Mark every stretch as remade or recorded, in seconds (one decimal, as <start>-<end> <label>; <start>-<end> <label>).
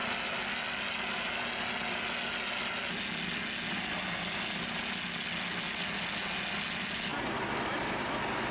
0.0-7.1 recorded; 7.1-8.1 remade; 8.1-8.5 recorded